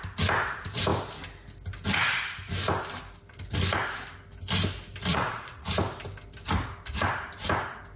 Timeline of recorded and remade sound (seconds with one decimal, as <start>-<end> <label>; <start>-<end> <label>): 0.0-5.1 recorded; 5.1-5.7 remade; 5.7-8.0 recorded